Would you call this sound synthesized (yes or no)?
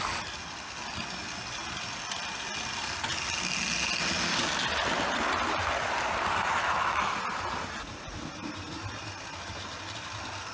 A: no